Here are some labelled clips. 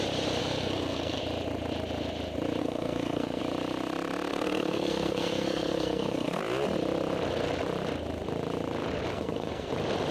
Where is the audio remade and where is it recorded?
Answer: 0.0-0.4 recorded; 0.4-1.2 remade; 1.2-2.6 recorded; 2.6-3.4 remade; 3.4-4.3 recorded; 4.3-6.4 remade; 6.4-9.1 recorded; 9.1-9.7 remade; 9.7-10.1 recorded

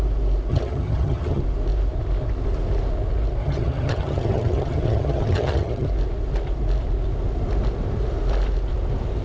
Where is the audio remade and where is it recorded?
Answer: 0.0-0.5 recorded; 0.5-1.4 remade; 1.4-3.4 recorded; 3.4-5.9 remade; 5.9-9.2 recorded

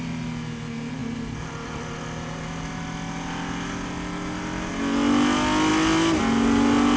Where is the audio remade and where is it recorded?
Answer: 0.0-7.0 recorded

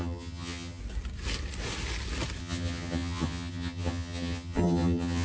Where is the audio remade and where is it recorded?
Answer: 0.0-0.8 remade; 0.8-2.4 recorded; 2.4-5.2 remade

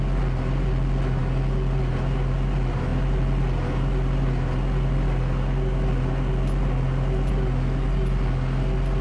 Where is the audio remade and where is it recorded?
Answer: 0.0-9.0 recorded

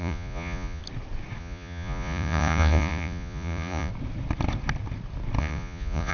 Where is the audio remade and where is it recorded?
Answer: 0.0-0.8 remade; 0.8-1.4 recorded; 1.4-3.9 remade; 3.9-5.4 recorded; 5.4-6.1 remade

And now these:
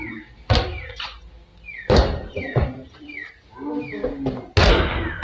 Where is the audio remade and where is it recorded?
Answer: 0.0-1.5 recorded; 1.5-3.3 remade; 3.3-5.2 recorded

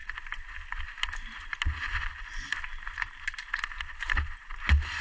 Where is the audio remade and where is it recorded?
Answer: 0.0-5.0 recorded